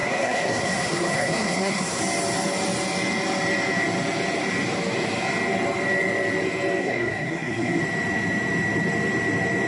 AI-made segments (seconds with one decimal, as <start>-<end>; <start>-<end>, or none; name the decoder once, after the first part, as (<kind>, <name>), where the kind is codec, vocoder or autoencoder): 0.0-2.0 (codec, SNAC); 6.8-7.8